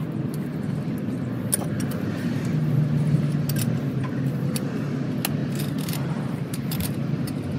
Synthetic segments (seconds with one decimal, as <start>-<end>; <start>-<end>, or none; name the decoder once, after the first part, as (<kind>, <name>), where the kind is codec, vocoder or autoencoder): 5.4-7.6 (vocoder, BigVGAN v2)